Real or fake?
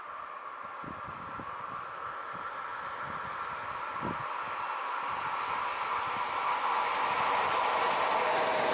real